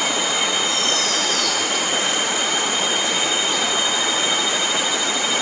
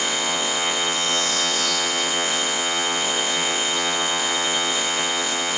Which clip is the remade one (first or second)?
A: second